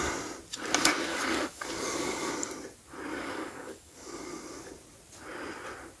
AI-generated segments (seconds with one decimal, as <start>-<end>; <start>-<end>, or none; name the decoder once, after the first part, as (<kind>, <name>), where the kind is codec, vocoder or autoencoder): 1.1-2.3 (codec, DAC); 3.1-4.7